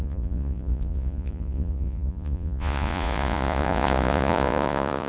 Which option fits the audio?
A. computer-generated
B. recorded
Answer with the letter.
A